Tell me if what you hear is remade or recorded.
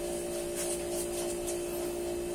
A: recorded